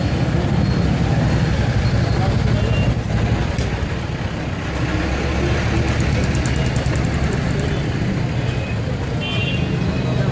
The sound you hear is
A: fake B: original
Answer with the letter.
B